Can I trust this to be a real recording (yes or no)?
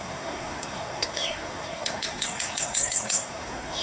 no